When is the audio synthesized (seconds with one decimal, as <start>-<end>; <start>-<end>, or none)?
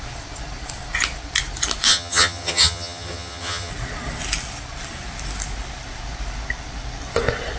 1.9-3.7